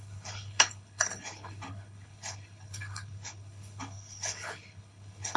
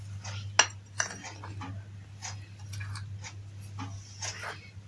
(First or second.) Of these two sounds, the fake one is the first